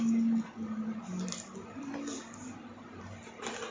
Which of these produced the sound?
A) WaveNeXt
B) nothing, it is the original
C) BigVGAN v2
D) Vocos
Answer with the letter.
B